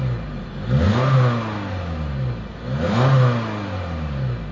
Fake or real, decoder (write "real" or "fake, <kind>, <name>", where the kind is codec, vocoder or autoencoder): real